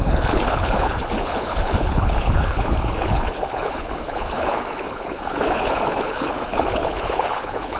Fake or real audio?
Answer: fake